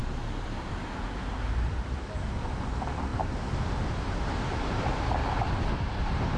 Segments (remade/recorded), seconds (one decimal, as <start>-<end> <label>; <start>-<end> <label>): 0.0-5.2 remade; 5.2-6.0 recorded; 6.0-6.4 remade